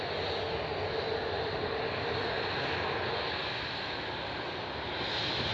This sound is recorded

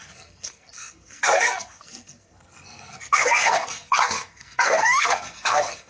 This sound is remade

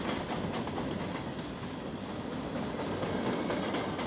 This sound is recorded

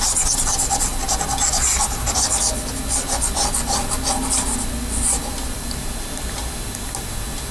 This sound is recorded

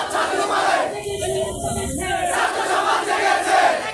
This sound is recorded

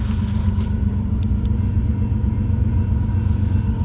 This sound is recorded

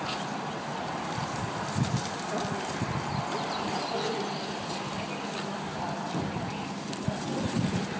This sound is recorded